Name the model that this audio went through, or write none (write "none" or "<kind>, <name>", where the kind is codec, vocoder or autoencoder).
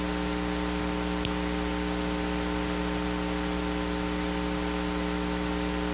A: none